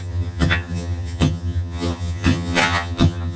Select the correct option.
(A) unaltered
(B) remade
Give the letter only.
B